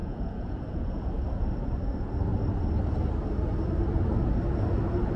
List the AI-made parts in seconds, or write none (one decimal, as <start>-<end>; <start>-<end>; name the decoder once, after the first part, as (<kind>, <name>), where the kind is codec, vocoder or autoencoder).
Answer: 0.0-1.1 (vocoder, Vocos)